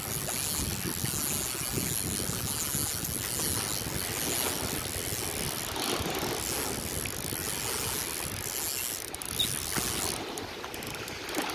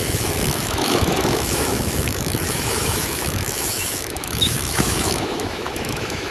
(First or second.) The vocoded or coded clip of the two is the second